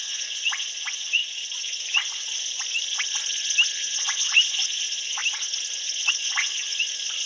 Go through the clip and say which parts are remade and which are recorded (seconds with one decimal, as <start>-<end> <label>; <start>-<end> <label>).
0.0-2.3 remade; 2.3-3.8 recorded; 3.8-5.2 remade; 5.2-6.1 recorded; 6.1-7.3 remade